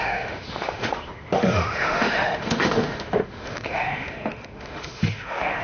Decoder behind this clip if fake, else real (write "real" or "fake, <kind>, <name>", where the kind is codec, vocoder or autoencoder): fake, autoencoder, DAC-VAE